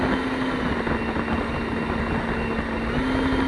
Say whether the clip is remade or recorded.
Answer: recorded